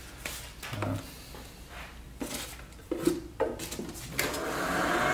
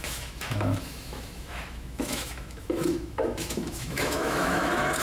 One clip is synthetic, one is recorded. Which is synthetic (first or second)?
second